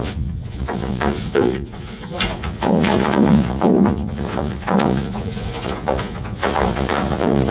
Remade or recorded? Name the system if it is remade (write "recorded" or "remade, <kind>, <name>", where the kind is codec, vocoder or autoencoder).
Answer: remade, vocoder, Vocos